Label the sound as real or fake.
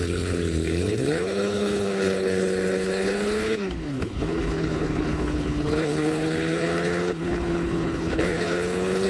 fake